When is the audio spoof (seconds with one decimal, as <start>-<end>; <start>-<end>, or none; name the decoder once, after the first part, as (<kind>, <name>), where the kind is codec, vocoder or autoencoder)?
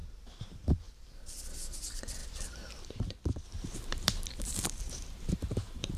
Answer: 0.0-1.4 (vocoder, BigVGAN v2); 2.2-6.0